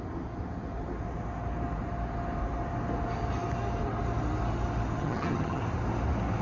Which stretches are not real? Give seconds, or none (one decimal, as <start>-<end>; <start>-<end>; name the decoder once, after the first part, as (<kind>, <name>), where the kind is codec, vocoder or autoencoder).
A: 5.0-5.6 (vocoder, HiFi-GAN)